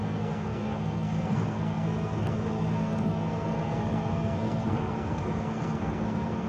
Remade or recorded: remade